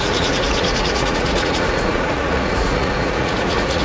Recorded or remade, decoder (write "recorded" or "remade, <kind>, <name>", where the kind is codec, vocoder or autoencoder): remade, vocoder, Vocos